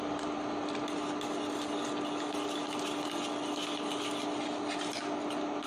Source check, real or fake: real